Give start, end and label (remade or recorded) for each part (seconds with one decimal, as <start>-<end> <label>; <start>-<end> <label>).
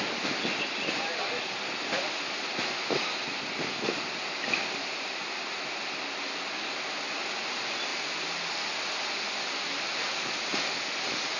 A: 0.0-11.4 recorded